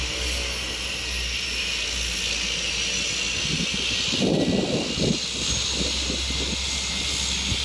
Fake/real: real